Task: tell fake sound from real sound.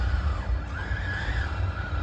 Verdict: fake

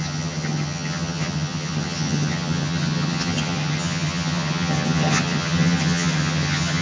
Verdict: fake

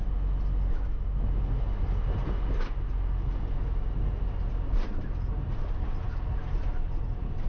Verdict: real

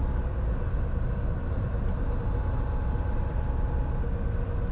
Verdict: real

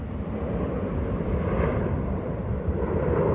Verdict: real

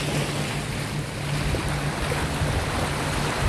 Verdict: real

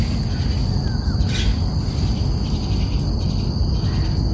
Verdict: real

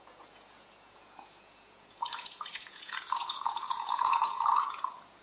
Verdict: fake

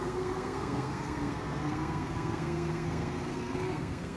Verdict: fake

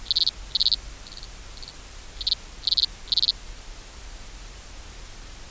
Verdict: real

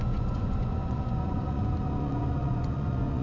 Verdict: fake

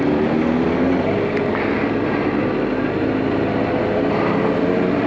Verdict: real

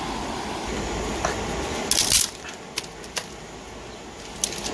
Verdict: real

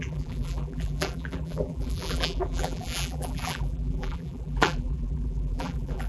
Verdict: fake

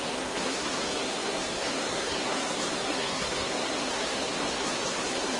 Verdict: fake